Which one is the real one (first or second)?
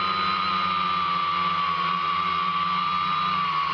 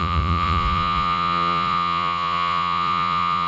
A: first